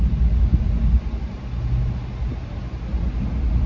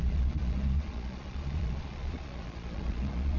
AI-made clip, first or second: second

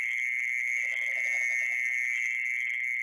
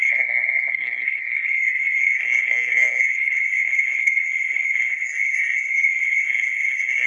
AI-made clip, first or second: second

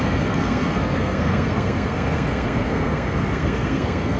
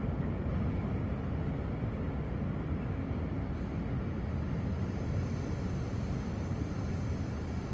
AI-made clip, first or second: first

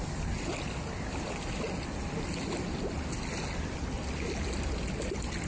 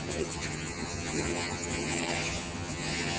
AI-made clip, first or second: second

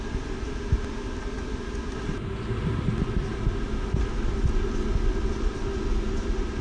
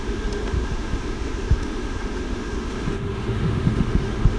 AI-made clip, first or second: second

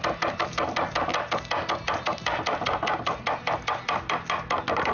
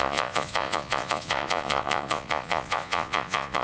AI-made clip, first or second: second